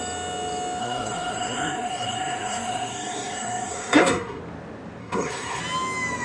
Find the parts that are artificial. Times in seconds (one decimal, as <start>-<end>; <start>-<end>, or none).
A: 0.8-4.4; 5.0-5.6